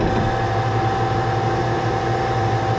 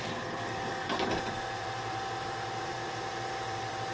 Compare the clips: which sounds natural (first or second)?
first